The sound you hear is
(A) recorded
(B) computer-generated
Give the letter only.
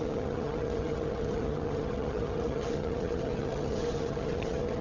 B